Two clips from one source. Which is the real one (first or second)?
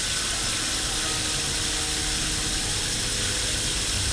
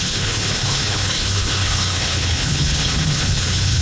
first